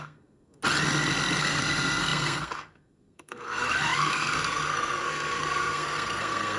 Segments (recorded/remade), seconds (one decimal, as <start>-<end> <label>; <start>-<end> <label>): 0.0-0.6 remade; 0.6-1.4 recorded; 1.4-6.6 remade